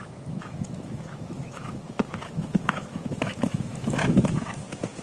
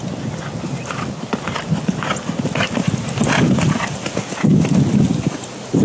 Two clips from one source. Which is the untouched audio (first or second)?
second